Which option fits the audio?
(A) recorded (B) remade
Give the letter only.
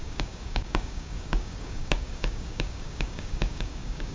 B